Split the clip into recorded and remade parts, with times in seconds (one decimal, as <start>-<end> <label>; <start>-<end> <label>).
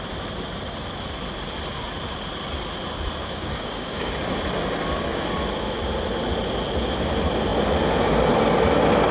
0.0-3.2 recorded; 3.2-4.1 remade; 4.1-9.1 recorded